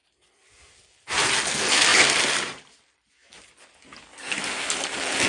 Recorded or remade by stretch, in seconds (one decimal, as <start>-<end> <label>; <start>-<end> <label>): 0.0-1.4 remade; 1.4-1.9 recorded; 1.9-3.1 remade; 3.1-5.3 recorded